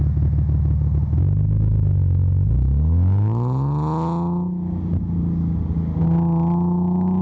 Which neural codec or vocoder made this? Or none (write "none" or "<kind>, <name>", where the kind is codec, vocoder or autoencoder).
none